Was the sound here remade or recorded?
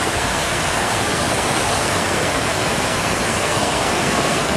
remade